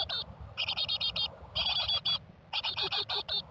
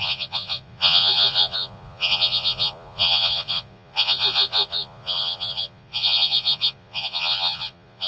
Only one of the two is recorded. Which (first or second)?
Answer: first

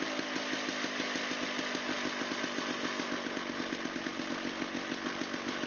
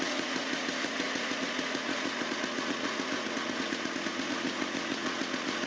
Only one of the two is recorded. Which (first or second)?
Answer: first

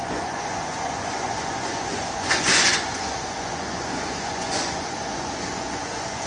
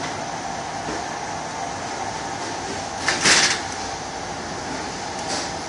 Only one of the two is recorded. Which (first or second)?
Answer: second